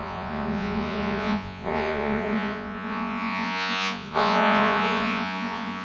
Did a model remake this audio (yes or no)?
yes